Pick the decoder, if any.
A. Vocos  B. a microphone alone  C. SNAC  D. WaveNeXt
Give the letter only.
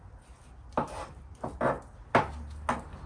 B